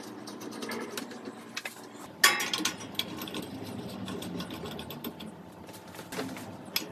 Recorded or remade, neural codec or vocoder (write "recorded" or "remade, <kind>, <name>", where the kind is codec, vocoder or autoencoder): recorded